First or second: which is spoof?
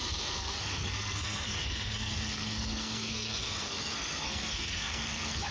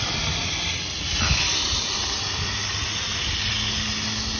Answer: first